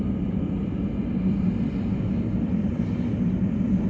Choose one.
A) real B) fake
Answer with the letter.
B